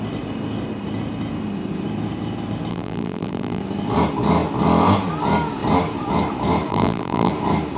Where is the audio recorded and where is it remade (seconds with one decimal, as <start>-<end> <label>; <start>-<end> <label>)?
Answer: 0.0-2.7 recorded; 2.7-3.6 remade; 3.6-6.7 recorded; 6.7-7.3 remade; 7.3-7.8 recorded